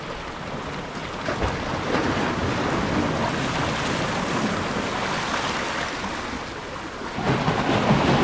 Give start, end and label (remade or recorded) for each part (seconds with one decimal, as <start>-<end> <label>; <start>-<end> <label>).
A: 0.0-8.2 recorded